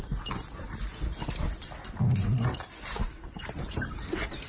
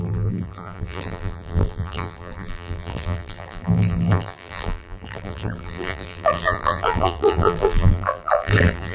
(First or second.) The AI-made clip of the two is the second